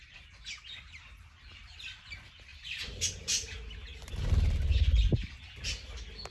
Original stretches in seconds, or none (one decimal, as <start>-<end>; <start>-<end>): 0.0-2.5; 3.1-6.3